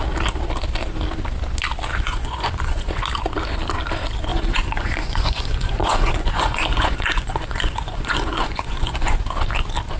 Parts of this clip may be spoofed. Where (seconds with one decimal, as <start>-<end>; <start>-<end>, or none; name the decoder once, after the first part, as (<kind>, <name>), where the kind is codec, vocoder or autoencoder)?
1.9-3.0 (vocoder, Vocos); 4.3-9.2